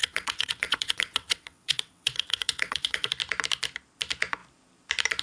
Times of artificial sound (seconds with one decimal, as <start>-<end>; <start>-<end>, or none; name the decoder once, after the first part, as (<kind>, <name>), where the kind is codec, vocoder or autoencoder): 0.0-3.1 (vocoder, WaveNeXt)